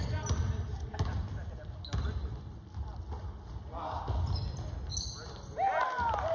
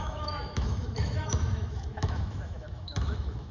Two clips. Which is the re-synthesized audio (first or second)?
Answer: second